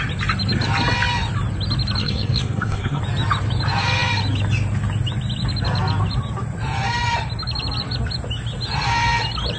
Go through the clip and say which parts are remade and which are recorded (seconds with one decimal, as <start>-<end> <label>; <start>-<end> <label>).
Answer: 0.0-2.0 recorded; 2.0-3.0 remade; 3.0-9.6 recorded